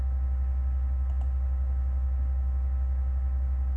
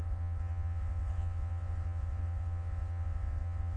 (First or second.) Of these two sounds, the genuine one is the first